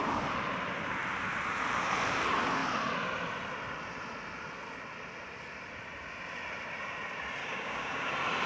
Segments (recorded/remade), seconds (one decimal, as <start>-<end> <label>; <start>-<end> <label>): 0.0-7.4 recorded; 7.4-8.1 remade; 8.1-8.5 recorded